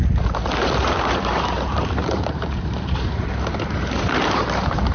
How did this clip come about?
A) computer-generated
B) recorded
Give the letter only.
A